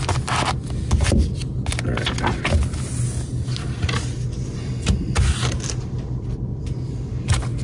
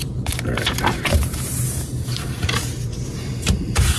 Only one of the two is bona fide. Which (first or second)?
first